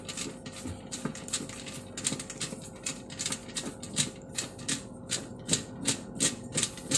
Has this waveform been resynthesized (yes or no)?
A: no